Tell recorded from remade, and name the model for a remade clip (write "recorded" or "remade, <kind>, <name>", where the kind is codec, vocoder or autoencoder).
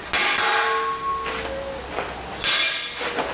recorded